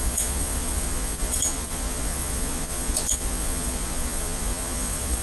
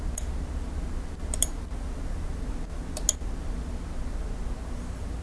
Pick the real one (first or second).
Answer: second